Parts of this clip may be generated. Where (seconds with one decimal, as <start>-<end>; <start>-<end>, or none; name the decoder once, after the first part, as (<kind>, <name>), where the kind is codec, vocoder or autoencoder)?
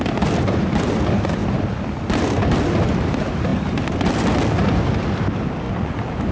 none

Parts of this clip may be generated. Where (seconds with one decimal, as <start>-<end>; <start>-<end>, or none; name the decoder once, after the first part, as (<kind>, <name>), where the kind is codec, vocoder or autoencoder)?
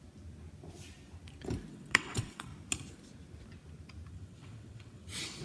1.7-2.5 (vocoder, WaveNeXt); 4.1-5.4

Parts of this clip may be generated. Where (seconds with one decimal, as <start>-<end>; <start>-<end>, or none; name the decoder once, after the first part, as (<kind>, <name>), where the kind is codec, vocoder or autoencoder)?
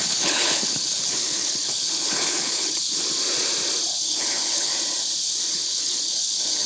0.0-3.0 (codec, HILCodec); 3.9-4.7; 5.5-6.7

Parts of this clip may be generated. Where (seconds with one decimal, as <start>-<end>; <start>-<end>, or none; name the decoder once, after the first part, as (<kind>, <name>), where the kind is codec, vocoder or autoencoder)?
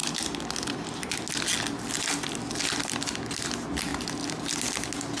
none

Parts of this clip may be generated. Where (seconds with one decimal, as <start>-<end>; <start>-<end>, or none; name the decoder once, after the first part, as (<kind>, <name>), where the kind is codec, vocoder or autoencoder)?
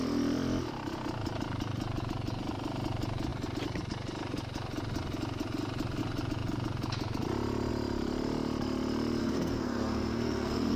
9.2-10.8 (codec, SNAC)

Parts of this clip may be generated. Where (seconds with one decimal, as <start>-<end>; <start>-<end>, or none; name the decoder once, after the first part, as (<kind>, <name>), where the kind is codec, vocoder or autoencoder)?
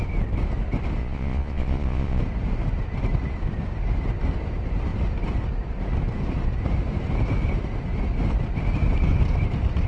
1.0-2.2 (vocoder, Vocos)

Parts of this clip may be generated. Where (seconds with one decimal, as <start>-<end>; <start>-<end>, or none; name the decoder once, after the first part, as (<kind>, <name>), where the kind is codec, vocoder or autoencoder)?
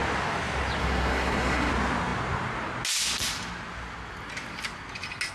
0.8-1.7 (codec, SNAC)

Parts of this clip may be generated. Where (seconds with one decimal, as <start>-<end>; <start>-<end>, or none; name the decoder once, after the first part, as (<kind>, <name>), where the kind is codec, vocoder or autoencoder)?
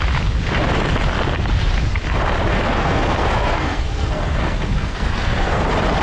2.5-5.6 (codec, SNAC)